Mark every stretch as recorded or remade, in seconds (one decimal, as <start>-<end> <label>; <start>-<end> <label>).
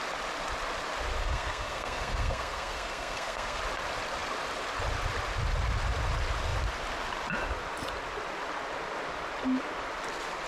0.0-1.2 recorded; 1.2-3.6 remade; 3.6-10.5 recorded